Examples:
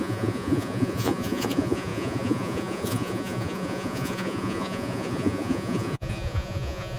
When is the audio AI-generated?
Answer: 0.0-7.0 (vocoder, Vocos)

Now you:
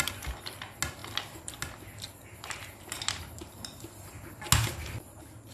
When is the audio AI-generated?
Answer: none

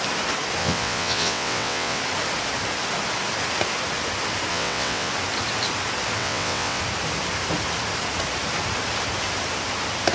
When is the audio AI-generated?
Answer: 0.6-2.0 (vocoder, WaveNeXt); 4.5-5.1; 6.2-6.8

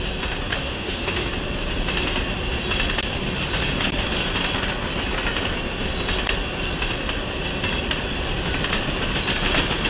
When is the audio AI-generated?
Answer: 0.5-1.3 (autoencoder, DAC-VAE)